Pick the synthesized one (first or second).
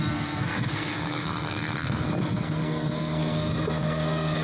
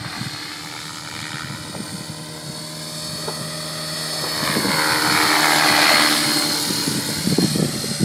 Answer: first